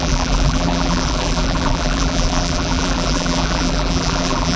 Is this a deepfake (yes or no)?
yes